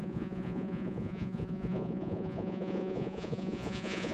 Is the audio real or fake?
fake